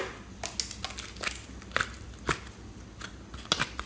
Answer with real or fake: real